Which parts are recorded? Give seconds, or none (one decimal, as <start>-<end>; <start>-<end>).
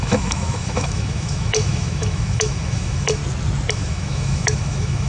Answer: 3.2-3.7